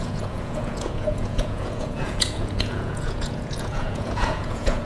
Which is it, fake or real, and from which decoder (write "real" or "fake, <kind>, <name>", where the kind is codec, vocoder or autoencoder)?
fake, vocoder, Vocos